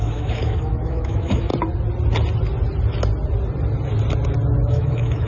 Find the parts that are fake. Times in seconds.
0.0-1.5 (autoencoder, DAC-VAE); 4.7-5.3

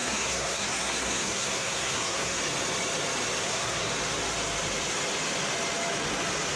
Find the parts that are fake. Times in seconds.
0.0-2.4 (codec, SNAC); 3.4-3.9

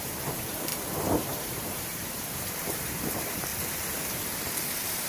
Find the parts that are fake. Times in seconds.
0.0-3.5 (vocoder, BigVGAN v2); 4.1-5.1